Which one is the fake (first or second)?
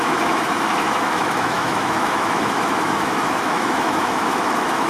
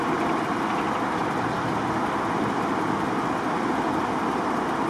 first